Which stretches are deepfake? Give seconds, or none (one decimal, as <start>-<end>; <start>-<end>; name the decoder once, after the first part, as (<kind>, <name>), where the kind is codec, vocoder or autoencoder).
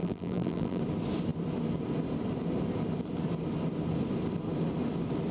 0.0-0.8 (vocoder, BigVGAN v2)